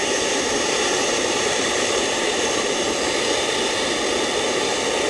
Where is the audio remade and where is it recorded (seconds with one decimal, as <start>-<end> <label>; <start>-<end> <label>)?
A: 0.0-3.1 remade; 3.1-5.1 recorded